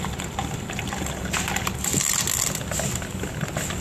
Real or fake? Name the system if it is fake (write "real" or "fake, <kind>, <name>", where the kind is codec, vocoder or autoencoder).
real